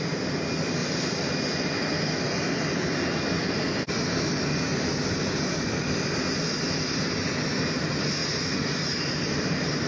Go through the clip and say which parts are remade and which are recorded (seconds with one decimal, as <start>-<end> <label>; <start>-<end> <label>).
0.0-0.8 recorded; 0.8-3.9 remade; 3.9-8.2 recorded; 8.2-9.4 remade; 9.4-9.9 recorded